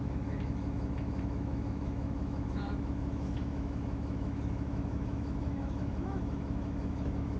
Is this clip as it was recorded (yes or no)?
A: no